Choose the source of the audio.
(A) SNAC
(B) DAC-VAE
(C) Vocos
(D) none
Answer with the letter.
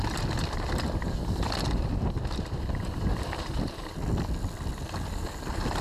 D